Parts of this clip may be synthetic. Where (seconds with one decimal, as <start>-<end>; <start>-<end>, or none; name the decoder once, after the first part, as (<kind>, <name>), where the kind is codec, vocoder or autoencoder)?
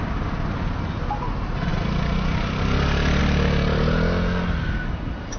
none